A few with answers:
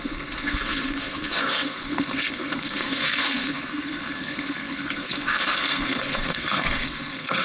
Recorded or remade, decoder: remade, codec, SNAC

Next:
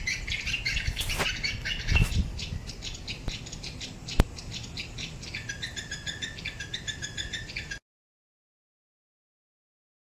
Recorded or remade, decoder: recorded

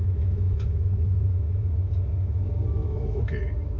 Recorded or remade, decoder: remade, autoencoder, DAC-VAE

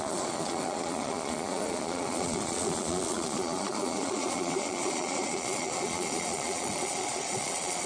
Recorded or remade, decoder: remade, vocoder, Vocos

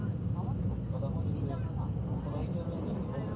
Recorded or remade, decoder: recorded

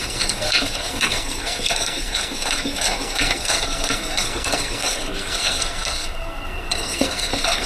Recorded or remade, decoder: remade, codec, SNAC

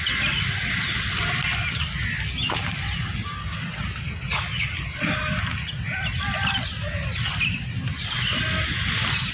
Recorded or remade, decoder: recorded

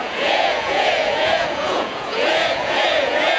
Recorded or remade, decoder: remade, vocoder, Vocos